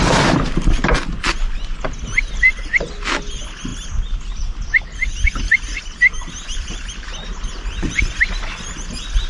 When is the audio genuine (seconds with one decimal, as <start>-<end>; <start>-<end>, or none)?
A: 0.0-9.3